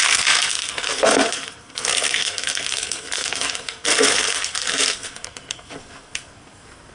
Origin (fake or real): fake